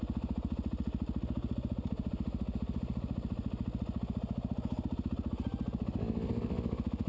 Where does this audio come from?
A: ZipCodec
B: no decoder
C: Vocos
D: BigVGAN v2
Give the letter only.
B